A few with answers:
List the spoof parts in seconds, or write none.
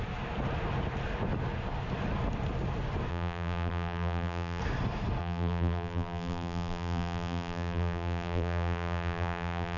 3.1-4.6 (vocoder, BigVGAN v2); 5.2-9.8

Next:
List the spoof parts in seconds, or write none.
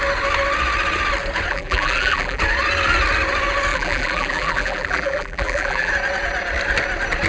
1.5-2.4 (vocoder, BigVGAN v2); 3.7-5.9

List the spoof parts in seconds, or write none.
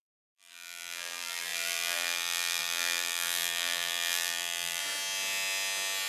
0.0-4.8 (vocoder, BigVGAN v2)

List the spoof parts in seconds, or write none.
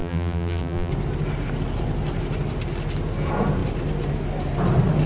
0.0-0.9 (vocoder, BigVGAN v2)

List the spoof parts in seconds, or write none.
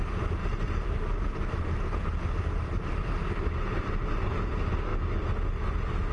4.0-4.5 (vocoder, BigVGAN v2)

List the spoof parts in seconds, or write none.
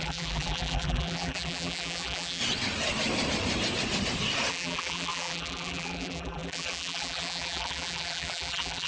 0.0-2.4 (vocoder, BigVGAN v2); 4.5-8.9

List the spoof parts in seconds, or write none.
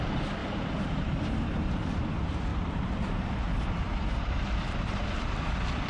0.4-2.1 (vocoder, BigVGAN v2); 2.5-5.5